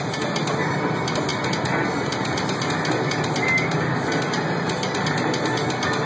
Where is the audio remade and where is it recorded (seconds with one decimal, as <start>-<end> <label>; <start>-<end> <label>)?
0.0-6.1 recorded